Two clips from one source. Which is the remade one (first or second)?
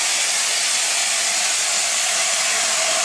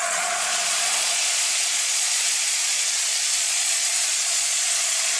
second